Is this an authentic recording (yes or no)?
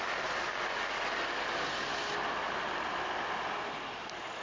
yes